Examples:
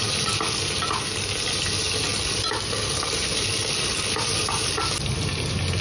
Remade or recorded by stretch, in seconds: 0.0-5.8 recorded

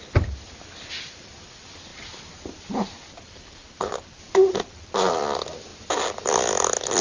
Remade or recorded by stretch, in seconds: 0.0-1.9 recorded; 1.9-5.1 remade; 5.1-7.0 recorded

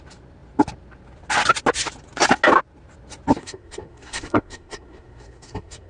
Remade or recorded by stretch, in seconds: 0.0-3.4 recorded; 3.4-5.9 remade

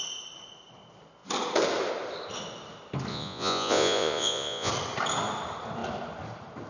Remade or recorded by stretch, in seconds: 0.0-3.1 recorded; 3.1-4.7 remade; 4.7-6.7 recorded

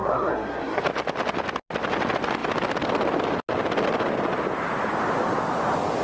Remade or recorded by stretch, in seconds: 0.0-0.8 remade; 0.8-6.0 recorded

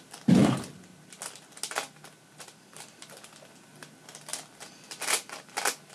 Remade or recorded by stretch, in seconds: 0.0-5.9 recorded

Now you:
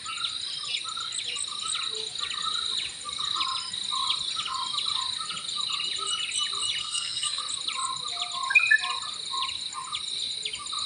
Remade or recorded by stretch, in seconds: 0.0-6.8 recorded; 6.8-7.4 remade; 7.4-10.9 recorded

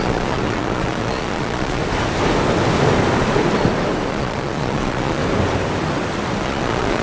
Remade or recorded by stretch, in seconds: 0.0-1.8 remade; 1.8-4.1 recorded; 4.1-5.2 remade; 5.2-6.4 recorded; 6.4-7.0 remade